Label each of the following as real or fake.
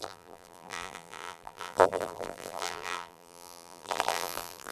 fake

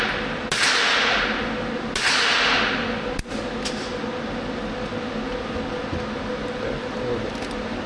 real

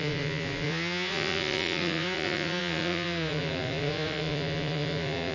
fake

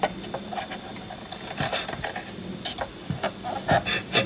real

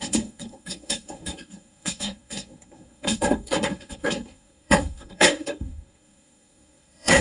fake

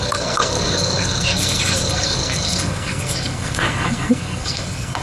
fake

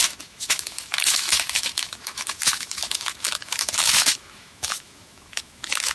fake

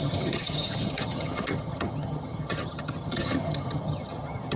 fake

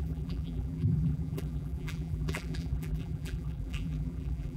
fake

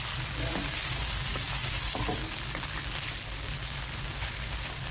real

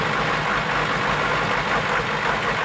real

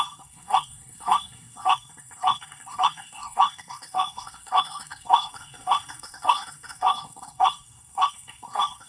fake